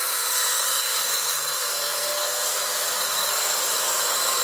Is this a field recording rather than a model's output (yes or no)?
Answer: no